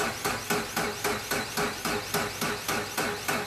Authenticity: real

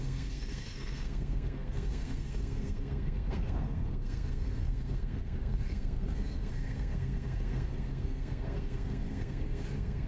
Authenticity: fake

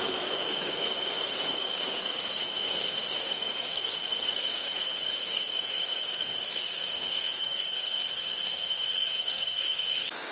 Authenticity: fake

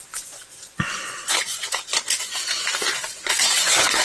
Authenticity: fake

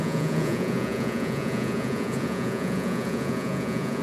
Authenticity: fake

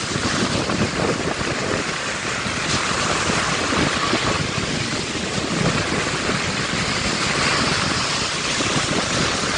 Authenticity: real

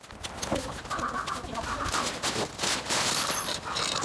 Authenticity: real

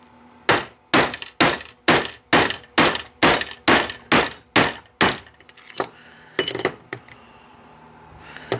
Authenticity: real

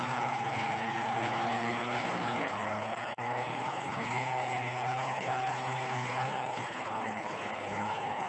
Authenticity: fake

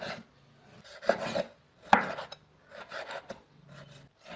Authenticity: real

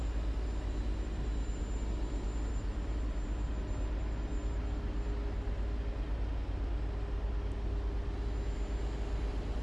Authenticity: real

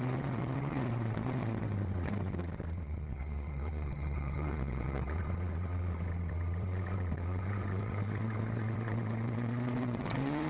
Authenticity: fake